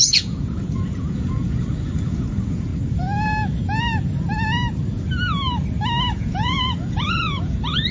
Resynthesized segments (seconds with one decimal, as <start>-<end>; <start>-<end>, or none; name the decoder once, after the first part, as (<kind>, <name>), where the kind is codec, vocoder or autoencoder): 0.0-2.7 (vocoder, Vocos); 6.1-7.9